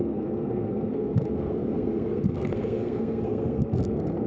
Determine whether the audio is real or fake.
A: fake